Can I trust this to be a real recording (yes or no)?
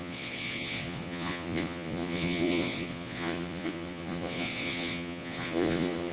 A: no